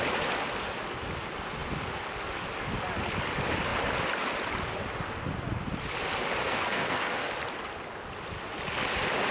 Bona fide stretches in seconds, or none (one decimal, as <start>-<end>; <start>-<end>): 0.0-6.4; 7.3-9.3